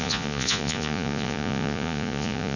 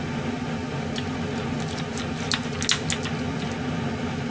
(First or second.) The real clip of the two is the second